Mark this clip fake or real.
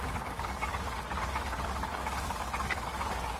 fake